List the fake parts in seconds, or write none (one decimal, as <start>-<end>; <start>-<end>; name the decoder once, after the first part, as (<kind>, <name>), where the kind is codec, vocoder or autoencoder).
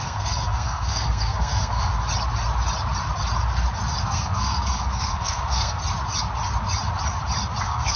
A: 0.0-1.9 (codec, SNAC); 4.0-5.8; 7.6-8.0